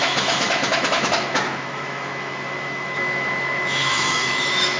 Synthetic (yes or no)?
yes